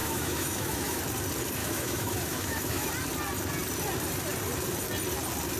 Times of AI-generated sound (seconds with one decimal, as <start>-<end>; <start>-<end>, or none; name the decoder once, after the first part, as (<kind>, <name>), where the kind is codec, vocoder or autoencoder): 0.0-1.0 (autoencoder, DAC-VAE); 1.6-2.9